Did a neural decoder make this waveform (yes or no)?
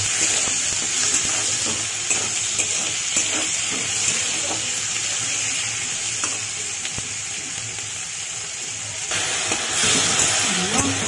no